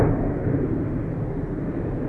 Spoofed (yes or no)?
no